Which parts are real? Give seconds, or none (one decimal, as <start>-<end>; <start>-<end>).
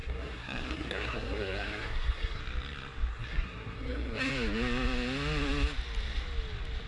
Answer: 2.4-3.1; 4.3-6.9